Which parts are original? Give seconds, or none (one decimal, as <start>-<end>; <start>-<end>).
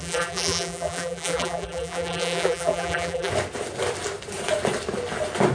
3.3-5.5